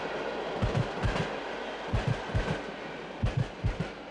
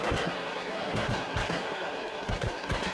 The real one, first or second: first